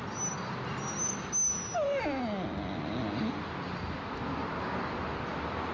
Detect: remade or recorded recorded